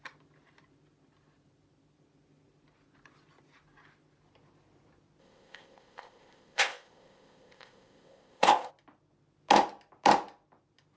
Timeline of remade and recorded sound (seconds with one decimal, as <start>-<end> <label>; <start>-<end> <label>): 0.0-5.2 recorded; 5.2-8.7 remade; 8.7-11.0 recorded